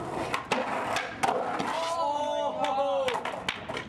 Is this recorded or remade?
recorded